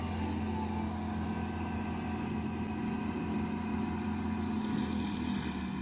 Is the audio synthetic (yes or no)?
no